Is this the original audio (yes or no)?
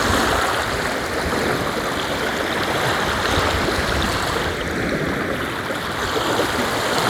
yes